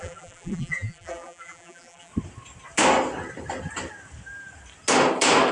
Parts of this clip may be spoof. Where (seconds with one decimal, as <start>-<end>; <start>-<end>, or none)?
0.0-2.1